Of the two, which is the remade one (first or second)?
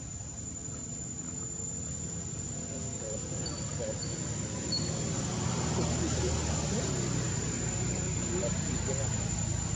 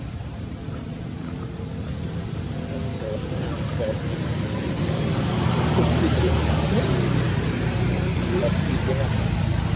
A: second